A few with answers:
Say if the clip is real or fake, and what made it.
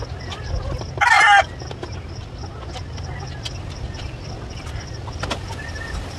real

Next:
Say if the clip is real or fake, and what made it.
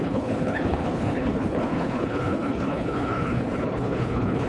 fake, codec, HILCodec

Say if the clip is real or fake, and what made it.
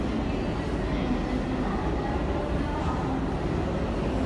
real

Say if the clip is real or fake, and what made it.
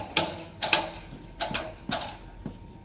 real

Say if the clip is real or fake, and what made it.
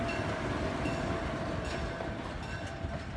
real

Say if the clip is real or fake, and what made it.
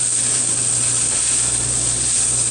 real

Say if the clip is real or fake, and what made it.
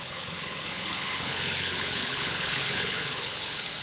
fake, codec, HILCodec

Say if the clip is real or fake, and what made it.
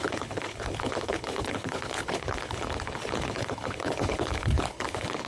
fake, codec, HILCodec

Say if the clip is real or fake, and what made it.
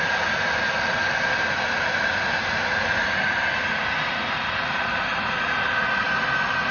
real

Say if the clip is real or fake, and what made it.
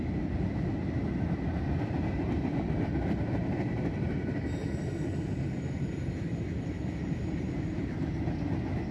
real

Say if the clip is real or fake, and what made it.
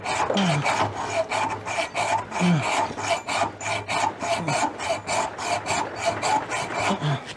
real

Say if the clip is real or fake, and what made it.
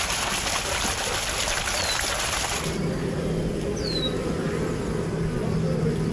real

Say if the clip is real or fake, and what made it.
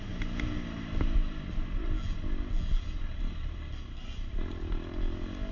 real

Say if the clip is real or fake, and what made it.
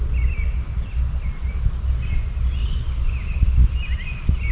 real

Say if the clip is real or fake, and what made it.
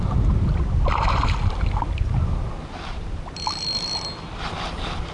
real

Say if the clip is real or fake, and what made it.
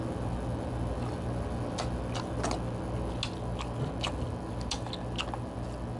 real